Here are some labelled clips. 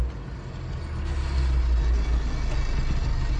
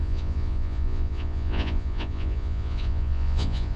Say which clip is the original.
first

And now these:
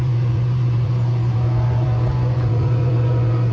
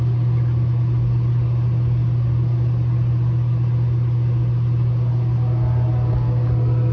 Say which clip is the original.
second